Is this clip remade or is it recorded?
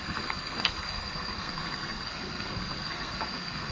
remade